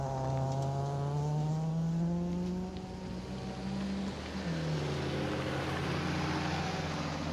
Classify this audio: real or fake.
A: real